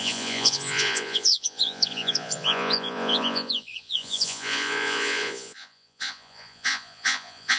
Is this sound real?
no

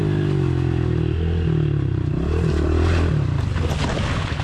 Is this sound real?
yes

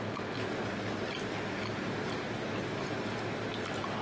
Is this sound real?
yes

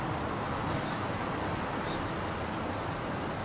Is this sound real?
yes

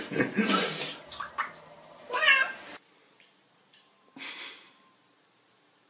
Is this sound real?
no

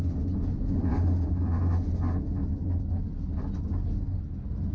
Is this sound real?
yes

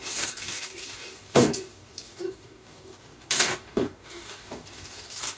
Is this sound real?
no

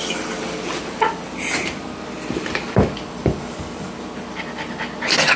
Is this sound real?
yes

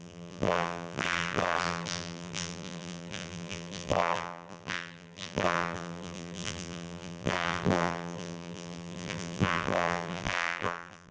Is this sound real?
no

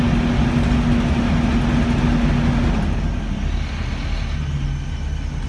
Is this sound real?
yes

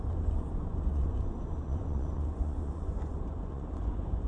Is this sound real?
no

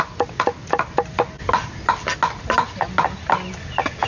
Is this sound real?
yes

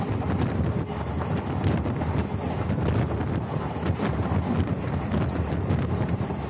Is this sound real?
yes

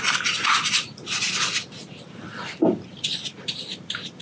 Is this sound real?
yes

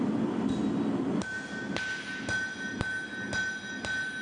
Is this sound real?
yes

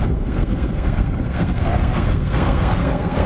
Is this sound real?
no